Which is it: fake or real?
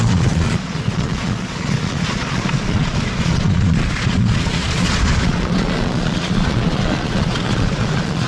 fake